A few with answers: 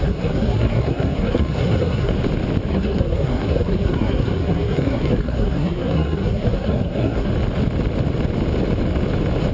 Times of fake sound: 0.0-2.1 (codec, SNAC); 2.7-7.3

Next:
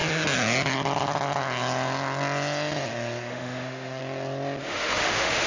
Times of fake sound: 3.3-4.0 (autoencoder, DAC-VAE); 4.6-5.5

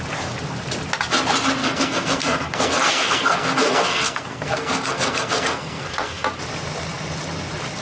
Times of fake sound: 1.6-6.3 (codec, SNAC)